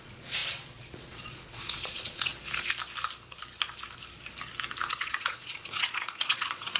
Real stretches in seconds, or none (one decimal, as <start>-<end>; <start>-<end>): 2.3-4.9